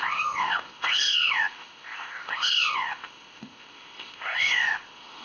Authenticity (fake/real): fake